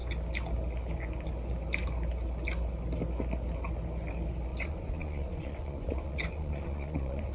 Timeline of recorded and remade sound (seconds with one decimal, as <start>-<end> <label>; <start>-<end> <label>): 0.0-4.5 recorded; 4.5-7.3 remade